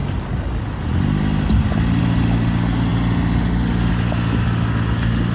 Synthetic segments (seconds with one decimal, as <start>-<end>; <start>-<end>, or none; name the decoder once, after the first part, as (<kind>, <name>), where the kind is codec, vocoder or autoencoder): none

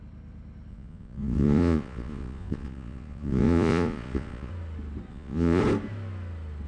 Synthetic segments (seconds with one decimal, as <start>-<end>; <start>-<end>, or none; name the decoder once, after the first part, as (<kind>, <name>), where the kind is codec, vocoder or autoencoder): 0.7-4.5 (vocoder, Vocos); 5.1-5.6

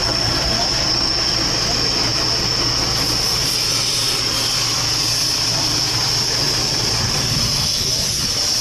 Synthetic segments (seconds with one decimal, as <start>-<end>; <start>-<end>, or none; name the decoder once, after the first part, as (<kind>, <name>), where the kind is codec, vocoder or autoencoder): none

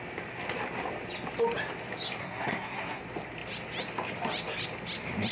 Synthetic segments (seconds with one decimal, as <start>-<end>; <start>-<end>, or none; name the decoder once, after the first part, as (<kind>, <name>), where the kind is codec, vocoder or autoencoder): 2.2-3.0 (codec, SNAC)

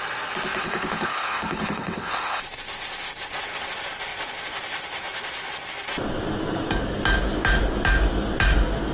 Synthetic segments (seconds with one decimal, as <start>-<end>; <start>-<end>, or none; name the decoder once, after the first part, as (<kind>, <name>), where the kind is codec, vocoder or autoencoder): 0.6-2.4 (codec, HILCodec)

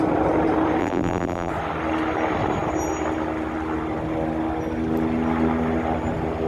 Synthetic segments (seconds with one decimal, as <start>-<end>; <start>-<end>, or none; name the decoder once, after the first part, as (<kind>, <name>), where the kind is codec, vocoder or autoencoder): 0.8-1.5 (vocoder, BigVGAN v2)

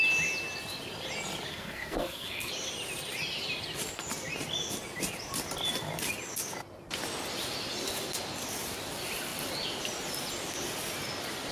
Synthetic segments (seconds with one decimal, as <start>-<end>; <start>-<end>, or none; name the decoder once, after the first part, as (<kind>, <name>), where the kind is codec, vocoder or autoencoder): 1.5-2.5 (codec, SNAC)